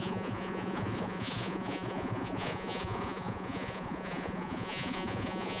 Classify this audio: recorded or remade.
remade